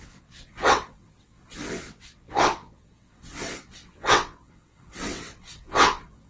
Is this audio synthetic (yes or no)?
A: yes